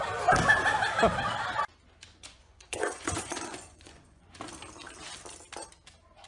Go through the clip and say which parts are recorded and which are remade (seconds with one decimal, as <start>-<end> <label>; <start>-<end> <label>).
0.0-2.1 recorded; 2.1-4.4 remade; 4.4-6.3 recorded